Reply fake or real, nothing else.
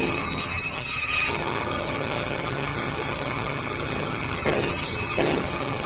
fake